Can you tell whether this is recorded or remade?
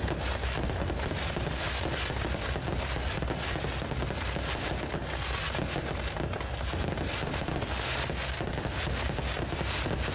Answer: recorded